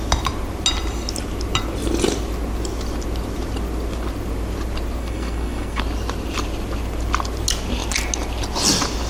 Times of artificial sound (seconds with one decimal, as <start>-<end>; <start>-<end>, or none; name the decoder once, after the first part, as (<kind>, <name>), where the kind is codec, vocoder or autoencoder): 5.0-5.8 (codec, SNAC)